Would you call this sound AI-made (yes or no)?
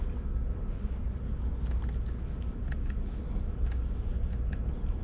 no